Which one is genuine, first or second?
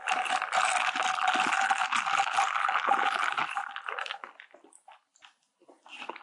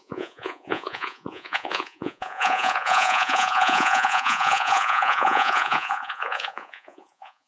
first